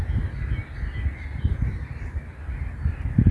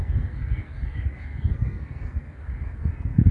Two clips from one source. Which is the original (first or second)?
first